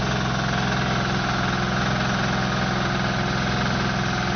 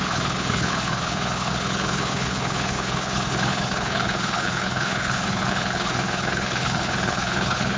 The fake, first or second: second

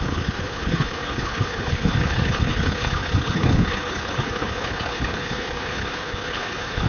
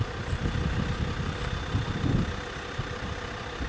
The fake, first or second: first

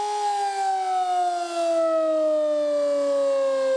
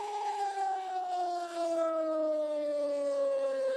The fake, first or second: second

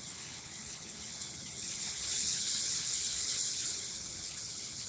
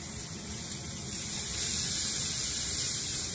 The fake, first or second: first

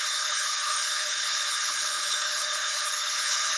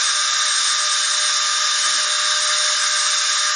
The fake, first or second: first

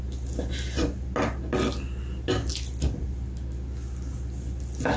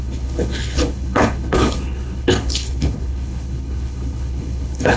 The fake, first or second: second